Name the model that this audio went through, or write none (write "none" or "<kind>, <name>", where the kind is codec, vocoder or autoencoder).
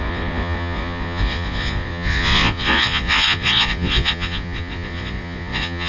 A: vocoder, Vocos